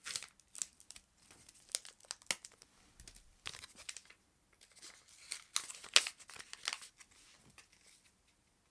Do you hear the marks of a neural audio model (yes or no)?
no